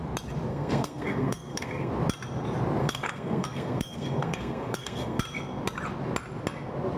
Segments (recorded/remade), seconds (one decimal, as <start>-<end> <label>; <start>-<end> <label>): 0.0-0.5 recorded; 0.5-1.9 remade; 1.9-2.8 recorded; 2.8-5.2 remade; 5.2-7.0 recorded